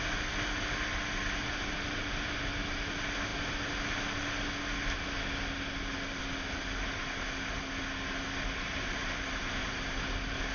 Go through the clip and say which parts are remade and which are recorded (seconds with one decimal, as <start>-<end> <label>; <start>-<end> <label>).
0.0-10.5 recorded